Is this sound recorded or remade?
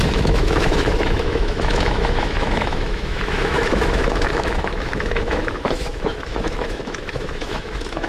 remade